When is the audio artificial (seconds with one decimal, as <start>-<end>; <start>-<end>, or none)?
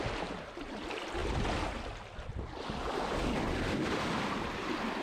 none